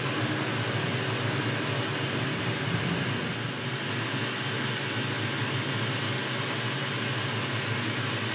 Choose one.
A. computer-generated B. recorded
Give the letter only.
B